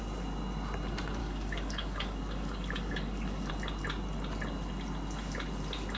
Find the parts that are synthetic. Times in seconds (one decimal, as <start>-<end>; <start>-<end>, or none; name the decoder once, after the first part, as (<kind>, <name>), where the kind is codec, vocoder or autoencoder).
1.2-3.5 (codec, DAC)